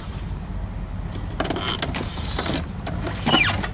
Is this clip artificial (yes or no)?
no